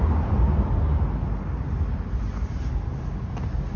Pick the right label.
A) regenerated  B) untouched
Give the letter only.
B